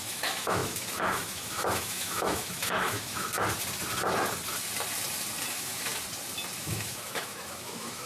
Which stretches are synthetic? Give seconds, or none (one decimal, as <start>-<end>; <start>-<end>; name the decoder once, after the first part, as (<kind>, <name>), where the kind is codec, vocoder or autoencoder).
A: 0.0-3.3 (autoencoder, DAC-VAE); 5.5-5.9; 6.6-8.1